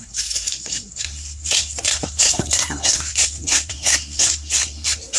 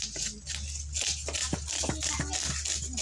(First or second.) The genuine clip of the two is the second